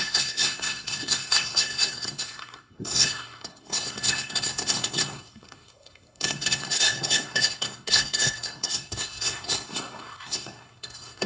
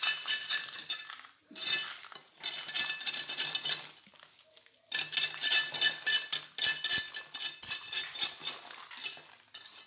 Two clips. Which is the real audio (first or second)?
second